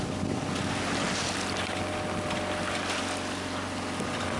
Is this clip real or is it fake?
real